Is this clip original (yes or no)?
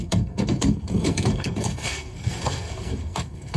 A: no